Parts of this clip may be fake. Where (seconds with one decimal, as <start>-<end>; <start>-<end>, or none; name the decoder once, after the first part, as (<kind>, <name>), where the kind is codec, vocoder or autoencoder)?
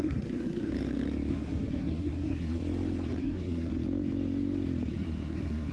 0.0-0.7 (codec, SNAC); 1.3-2.6; 3.2-3.7; 4.9-5.7